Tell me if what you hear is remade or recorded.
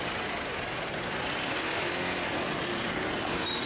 recorded